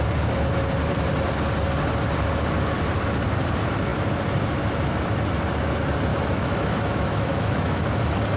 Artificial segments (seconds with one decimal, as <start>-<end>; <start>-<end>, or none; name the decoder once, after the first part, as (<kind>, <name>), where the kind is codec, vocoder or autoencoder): 6.1-7.8 (autoencoder, DAC-VAE)